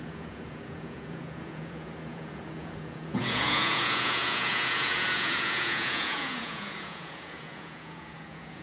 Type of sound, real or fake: fake